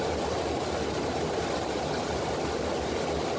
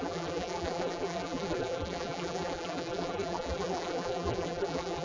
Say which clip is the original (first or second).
first